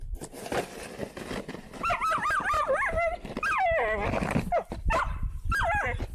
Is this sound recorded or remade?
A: recorded